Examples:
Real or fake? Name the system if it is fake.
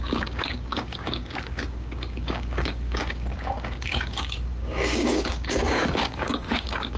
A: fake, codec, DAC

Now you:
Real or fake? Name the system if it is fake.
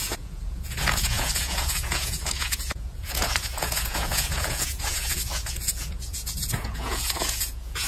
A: fake, vocoder, Vocos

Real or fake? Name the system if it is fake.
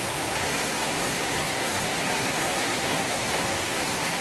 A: fake, codec, SNAC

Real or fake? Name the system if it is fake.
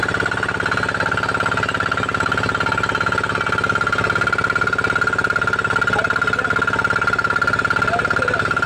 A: real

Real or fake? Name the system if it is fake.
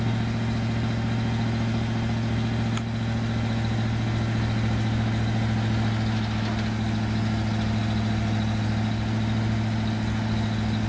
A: real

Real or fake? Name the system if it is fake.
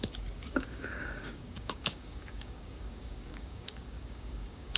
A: fake, codec, DAC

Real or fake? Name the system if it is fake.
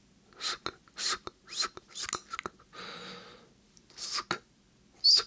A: real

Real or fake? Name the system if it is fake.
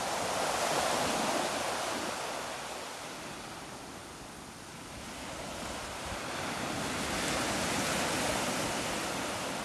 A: real